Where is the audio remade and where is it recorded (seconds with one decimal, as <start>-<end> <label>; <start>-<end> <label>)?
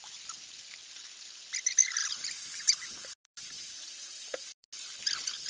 0.0-2.0 recorded; 2.0-4.7 remade; 4.7-5.5 recorded